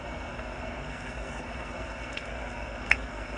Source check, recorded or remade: remade